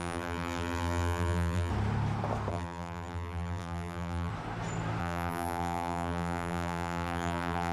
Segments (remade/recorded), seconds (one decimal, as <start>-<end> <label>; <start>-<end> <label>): 0.0-1.7 remade; 1.7-2.5 recorded; 2.5-4.3 remade; 4.3-5.0 recorded; 5.0-7.7 remade

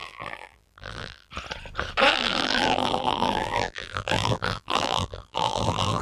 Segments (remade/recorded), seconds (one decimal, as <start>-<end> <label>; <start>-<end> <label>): 0.0-1.3 remade; 1.3-2.1 recorded; 2.1-6.0 remade

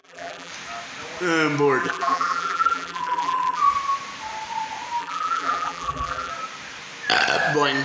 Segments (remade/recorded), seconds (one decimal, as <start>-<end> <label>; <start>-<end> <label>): 0.0-0.5 remade; 0.5-1.8 recorded; 1.8-3.6 remade; 3.6-5.0 recorded; 5.0-6.3 remade; 6.3-7.8 recorded

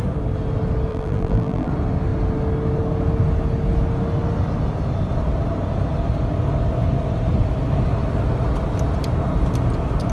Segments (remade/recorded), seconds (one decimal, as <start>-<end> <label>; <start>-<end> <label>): 0.0-0.9 recorded; 0.9-1.7 remade; 1.7-10.1 recorded

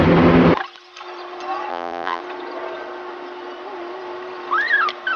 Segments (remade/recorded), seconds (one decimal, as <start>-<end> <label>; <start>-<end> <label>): 0.0-1.7 recorded; 1.7-2.2 remade; 2.2-5.2 recorded

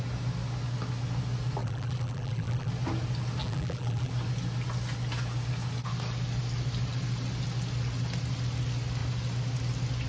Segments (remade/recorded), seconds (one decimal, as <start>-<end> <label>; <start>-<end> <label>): 0.0-1.6 recorded; 1.6-2.7 remade; 2.7-3.4 recorded; 3.4-4.1 remade; 4.1-10.1 recorded